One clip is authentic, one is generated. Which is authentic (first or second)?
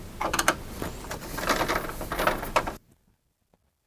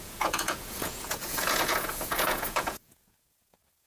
first